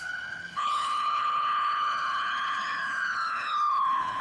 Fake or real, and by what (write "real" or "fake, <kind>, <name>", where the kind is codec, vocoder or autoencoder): fake, codec, HILCodec